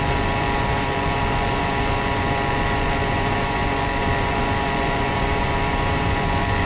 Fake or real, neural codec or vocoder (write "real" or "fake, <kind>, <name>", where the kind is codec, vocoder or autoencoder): fake, vocoder, Vocos